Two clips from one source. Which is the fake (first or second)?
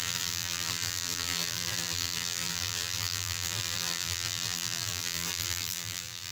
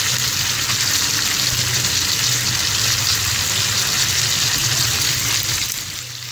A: first